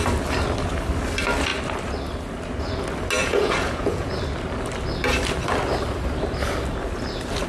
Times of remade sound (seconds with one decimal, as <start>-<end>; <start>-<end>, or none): 3.2-4.1